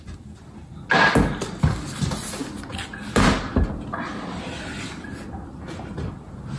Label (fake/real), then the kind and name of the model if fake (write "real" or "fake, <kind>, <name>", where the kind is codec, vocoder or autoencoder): real